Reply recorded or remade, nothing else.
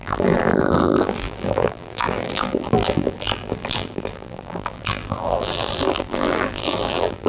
remade